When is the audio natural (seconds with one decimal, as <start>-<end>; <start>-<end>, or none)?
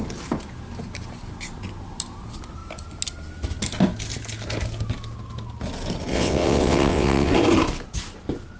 0.0-6.1; 7.3-8.6